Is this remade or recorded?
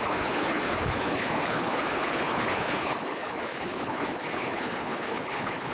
remade